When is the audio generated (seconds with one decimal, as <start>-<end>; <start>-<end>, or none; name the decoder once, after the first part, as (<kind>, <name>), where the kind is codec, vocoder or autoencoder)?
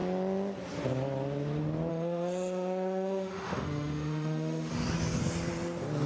1.9-4.7 (autoencoder, DAC-VAE)